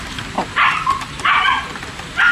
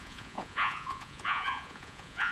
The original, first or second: first